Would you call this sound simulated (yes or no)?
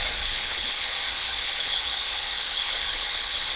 yes